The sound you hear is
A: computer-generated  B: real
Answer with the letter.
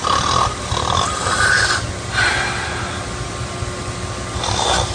B